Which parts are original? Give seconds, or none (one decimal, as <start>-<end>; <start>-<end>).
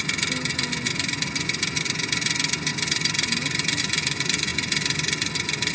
0.0-2.7; 3.8-4.5